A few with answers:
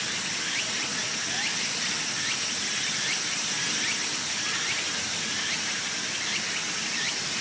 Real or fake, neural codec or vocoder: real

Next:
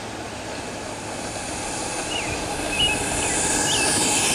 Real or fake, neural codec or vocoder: real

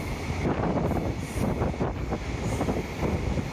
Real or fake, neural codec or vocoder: real